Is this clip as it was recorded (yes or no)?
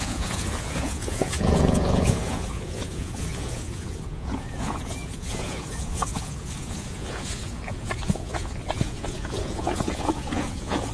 no